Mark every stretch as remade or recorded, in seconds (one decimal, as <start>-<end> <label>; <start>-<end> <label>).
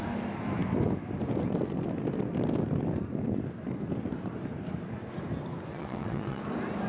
0.0-5.7 recorded; 5.7-6.4 remade; 6.4-6.9 recorded